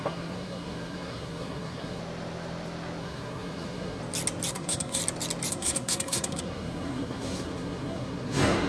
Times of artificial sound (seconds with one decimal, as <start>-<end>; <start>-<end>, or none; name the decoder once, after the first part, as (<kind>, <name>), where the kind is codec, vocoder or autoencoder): 0.0-2.0 (codec, SNAC); 3.0-4.0; 4.5-5.0; 5.5-8.7